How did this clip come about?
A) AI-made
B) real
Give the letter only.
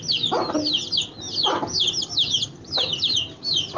B